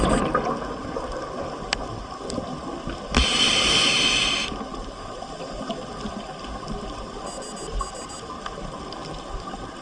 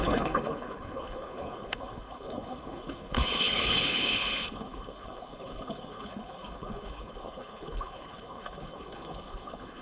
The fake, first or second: second